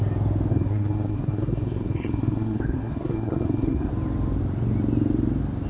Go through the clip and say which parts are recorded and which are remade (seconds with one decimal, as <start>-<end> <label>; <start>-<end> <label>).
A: 0.0-0.5 recorded; 0.5-3.9 remade; 3.9-5.7 recorded